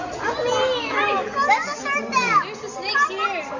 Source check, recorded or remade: recorded